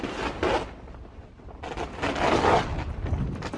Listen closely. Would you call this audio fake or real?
real